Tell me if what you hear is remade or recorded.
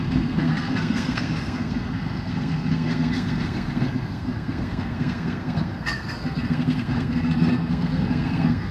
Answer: remade